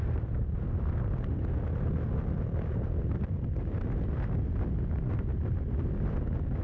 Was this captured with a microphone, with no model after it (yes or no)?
yes